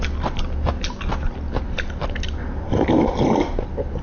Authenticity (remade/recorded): recorded